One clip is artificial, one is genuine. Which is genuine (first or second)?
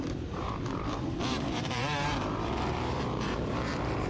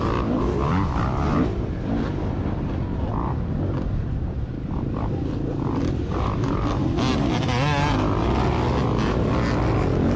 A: second